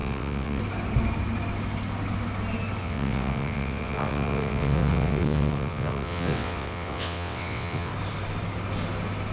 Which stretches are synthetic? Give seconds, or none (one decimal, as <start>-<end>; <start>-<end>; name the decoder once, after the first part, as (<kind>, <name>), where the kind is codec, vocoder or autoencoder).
0.0-0.6 (vocoder, WaveNeXt); 2.8-7.9